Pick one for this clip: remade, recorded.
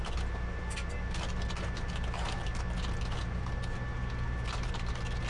recorded